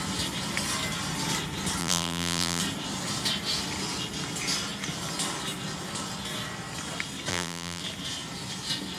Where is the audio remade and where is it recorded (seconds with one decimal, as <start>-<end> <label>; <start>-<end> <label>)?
0.0-1.8 recorded; 1.8-2.6 remade; 2.6-7.3 recorded; 7.3-7.8 remade; 7.8-9.0 recorded